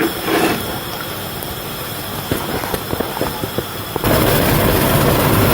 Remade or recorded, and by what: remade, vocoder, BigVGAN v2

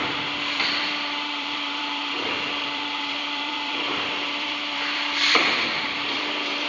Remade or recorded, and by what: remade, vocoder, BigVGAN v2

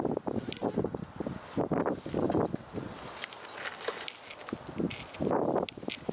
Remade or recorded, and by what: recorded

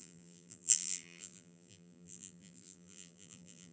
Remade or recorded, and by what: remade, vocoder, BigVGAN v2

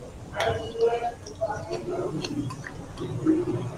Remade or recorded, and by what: recorded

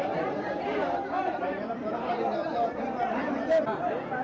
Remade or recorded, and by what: remade, vocoder, BigVGAN v2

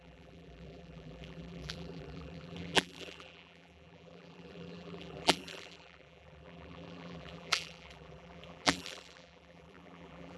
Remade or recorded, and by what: remade, vocoder, BigVGAN v2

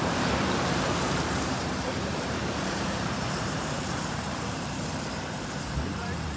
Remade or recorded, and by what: remade, vocoder, BigVGAN v2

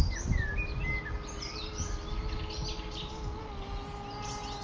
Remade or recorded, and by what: recorded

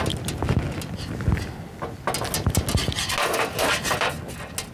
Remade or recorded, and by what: recorded